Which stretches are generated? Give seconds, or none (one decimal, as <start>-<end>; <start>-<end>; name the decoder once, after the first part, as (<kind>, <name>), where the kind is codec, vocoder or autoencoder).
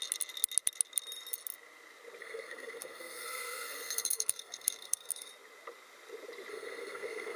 2.2-5.3 (codec, SNAC); 6.5-7.4